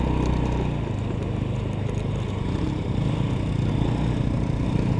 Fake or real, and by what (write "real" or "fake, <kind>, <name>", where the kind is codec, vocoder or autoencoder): real